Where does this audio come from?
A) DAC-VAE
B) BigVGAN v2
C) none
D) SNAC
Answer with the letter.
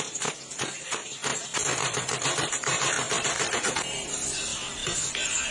C